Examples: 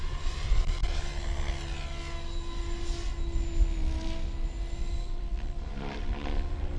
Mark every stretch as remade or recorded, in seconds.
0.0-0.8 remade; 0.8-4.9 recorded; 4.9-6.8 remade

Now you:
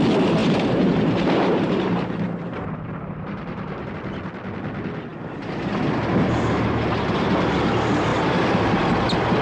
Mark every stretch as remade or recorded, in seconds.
0.0-0.4 recorded; 0.4-3.9 remade; 3.9-8.1 recorded; 8.1-8.8 remade; 8.8-9.4 recorded

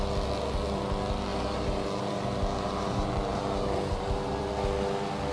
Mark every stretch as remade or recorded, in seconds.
0.0-1.3 recorded; 1.3-4.5 remade; 4.5-5.3 recorded

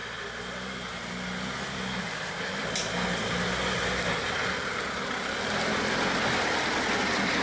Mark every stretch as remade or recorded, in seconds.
0.0-7.4 recorded

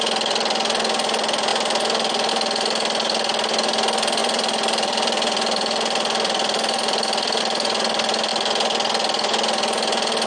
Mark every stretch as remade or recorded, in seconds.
0.0-4.2 recorded; 4.2-7.4 remade; 7.4-10.3 recorded

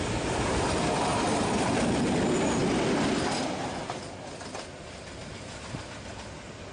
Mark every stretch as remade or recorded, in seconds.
0.0-5.2 recorded; 5.2-5.8 remade; 5.8-6.7 recorded

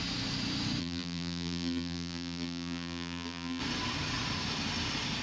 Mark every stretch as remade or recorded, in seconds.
0.0-0.8 recorded; 0.8-3.6 remade; 3.6-5.2 recorded

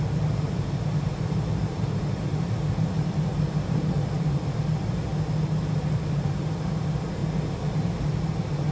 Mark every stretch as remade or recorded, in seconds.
0.0-5.1 remade; 5.1-5.6 recorded; 5.6-7.2 remade; 7.2-7.7 recorded; 7.7-8.7 remade